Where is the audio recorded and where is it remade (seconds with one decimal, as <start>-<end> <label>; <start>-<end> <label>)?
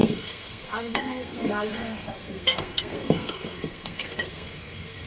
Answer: 0.0-5.1 remade